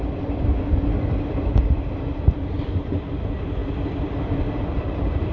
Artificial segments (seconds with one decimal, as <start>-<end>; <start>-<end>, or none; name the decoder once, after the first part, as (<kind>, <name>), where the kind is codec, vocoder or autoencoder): none